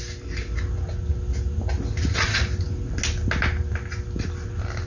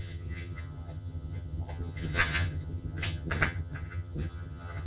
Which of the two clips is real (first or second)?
first